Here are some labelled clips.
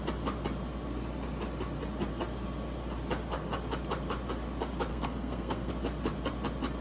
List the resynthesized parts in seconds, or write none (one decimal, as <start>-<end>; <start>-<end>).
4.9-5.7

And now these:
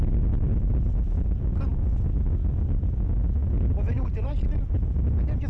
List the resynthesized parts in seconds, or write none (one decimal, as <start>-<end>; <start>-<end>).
none

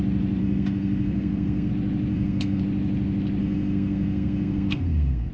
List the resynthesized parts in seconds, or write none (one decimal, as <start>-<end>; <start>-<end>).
0.4-1.7; 2.1-2.6; 3.4-5.3

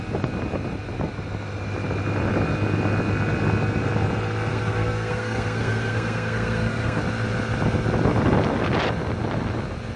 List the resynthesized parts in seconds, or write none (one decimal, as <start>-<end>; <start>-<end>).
4.5-7.0

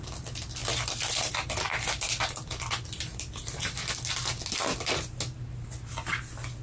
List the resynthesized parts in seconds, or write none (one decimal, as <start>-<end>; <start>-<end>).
0.6-4.3

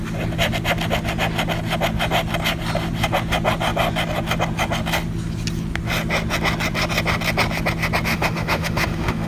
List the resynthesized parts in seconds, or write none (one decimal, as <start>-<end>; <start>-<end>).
8.1-9.3

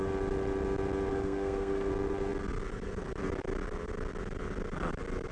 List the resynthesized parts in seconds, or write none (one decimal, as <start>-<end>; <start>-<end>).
1.1-1.9

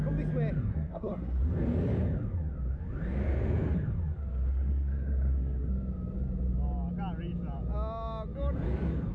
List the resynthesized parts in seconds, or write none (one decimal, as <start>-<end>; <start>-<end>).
0.7-1.4; 4.5-5.7